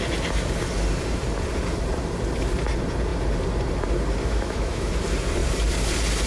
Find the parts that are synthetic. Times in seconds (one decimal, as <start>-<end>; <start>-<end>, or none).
4.2-4.9